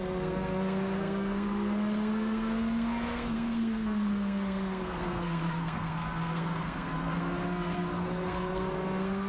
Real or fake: fake